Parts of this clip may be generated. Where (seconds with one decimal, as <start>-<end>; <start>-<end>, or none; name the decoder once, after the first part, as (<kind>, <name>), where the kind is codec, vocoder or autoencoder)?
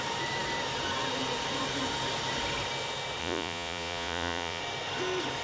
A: 3.2-4.6 (vocoder, Vocos)